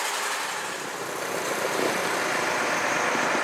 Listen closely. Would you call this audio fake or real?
real